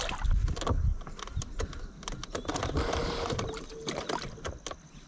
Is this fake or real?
real